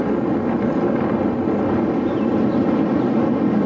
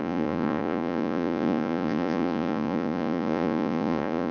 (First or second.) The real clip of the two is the first